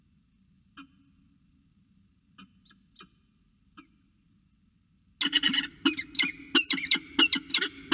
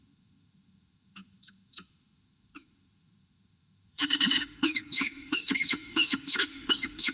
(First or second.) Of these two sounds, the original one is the first